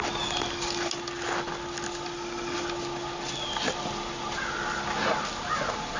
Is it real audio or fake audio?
real